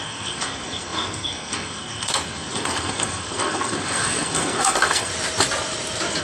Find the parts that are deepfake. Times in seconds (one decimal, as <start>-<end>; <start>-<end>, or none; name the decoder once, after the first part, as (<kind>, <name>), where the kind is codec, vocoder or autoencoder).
0.0-5.1 (codec, SNAC)